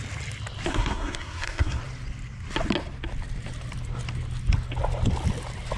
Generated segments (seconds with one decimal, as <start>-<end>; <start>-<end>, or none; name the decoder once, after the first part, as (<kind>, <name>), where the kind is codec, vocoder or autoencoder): 0.7-1.8 (codec, SNAC)